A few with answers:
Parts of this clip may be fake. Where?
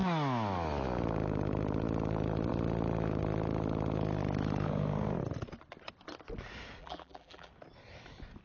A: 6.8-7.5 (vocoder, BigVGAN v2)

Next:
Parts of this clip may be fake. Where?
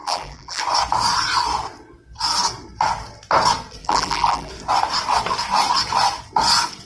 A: 0.0-0.6 (vocoder, BigVGAN v2); 3.8-4.5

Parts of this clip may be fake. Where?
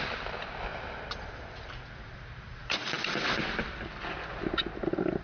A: 2.5-3.4 (vocoder, BigVGAN v2)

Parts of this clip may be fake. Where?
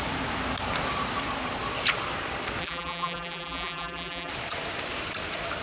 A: 2.6-4.3 (vocoder, BigVGAN v2)